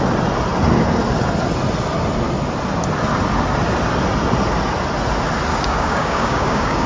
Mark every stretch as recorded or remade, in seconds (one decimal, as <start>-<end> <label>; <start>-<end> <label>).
0.0-5.5 recorded; 5.5-6.9 remade